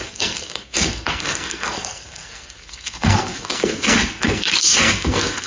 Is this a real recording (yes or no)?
no